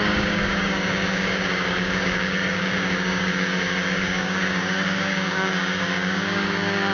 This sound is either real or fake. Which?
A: fake